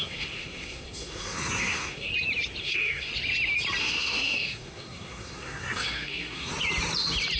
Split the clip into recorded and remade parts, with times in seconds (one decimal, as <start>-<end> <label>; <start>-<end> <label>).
0.0-2.1 remade; 2.1-2.6 recorded; 2.6-3.1 remade; 3.1-3.8 recorded; 3.8-6.5 remade; 6.5-7.4 recorded

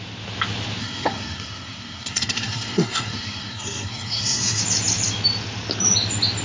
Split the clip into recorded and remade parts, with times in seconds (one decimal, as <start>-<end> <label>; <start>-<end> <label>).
0.0-0.8 recorded; 0.8-4.6 remade; 4.6-6.4 recorded